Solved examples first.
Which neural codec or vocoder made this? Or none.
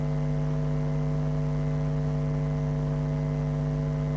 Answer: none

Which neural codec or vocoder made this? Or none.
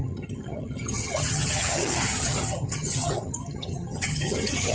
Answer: vocoder, HiFi-GAN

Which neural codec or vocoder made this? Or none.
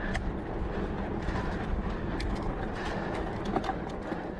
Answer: none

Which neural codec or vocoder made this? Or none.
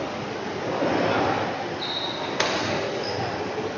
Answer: none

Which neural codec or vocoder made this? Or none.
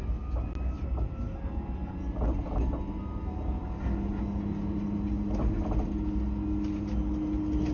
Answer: none